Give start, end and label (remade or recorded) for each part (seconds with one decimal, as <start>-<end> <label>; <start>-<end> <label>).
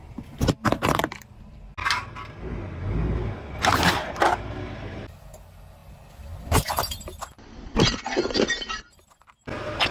0.0-5.8 recorded; 5.8-9.0 remade; 9.0-9.9 recorded